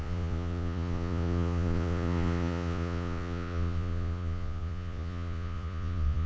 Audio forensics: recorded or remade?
remade